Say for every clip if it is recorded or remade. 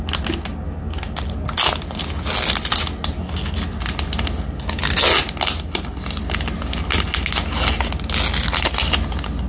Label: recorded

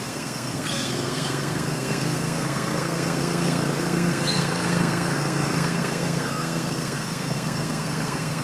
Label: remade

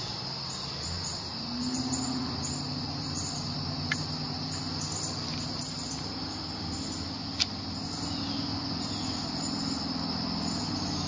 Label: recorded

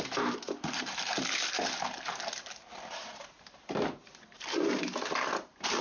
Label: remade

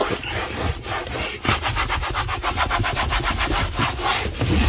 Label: recorded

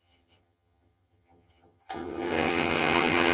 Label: remade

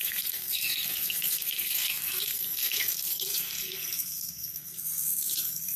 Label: remade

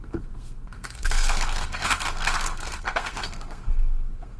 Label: remade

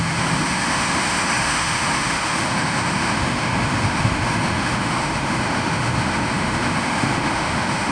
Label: remade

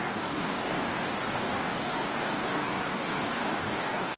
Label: remade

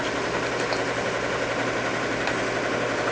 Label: recorded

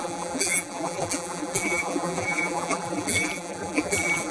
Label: remade